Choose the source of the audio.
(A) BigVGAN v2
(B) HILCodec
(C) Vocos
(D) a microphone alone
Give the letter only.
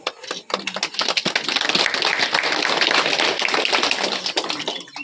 D